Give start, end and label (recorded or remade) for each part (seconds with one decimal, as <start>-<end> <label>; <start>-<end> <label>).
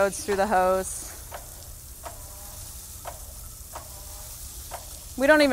0.0-5.5 recorded